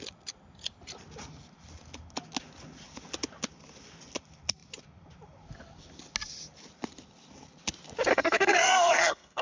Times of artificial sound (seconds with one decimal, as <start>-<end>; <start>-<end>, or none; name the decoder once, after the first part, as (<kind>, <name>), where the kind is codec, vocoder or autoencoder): 8.1-9.4 (codec, SNAC)